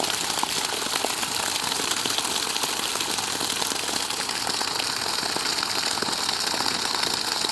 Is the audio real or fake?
real